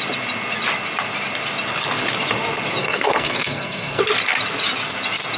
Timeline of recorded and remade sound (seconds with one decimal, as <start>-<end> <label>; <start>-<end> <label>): 0.0-2.8 recorded; 2.8-4.0 remade; 4.0-5.4 recorded